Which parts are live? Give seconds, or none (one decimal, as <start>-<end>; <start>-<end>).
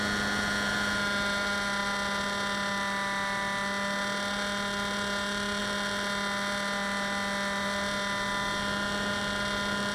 0.0-9.9